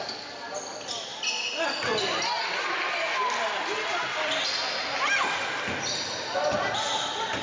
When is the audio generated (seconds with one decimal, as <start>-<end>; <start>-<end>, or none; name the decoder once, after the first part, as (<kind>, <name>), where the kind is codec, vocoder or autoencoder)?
none